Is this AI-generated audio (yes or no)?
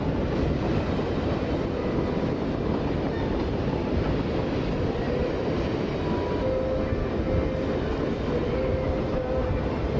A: no